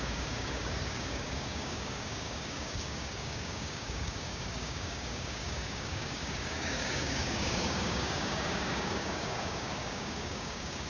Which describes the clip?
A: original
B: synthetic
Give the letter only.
B